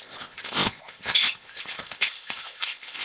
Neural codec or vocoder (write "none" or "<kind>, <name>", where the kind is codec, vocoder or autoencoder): codec, ZipCodec